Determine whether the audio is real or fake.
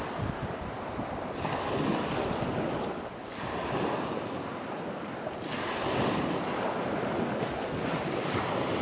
real